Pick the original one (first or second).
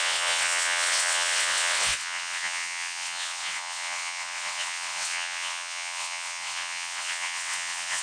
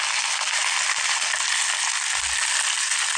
second